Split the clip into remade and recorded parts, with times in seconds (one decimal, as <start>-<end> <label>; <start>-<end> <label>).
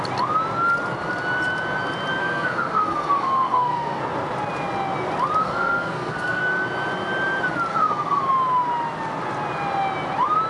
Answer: 0.0-2.2 recorded; 2.2-4.0 remade; 4.0-5.4 recorded; 5.4-6.4 remade; 6.4-7.7 recorded; 7.7-8.3 remade; 8.3-10.5 recorded